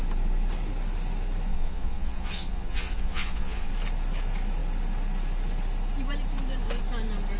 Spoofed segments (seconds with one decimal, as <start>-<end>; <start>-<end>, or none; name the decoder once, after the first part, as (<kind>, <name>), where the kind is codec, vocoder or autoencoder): 1.5-3.7 (vocoder, Vocos)